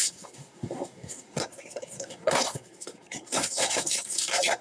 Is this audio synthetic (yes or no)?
yes